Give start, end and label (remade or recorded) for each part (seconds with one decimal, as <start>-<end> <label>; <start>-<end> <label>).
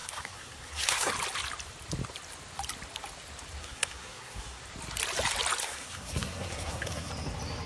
0.0-1.1 remade; 1.1-3.6 recorded; 3.6-4.6 remade; 4.6-5.6 recorded; 5.6-7.1 remade; 7.1-7.7 recorded